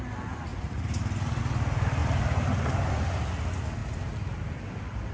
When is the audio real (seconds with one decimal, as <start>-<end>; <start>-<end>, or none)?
0.0-0.5; 1.4-2.0; 2.9-3.8